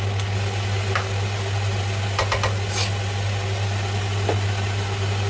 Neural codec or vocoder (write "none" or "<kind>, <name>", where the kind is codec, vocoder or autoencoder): none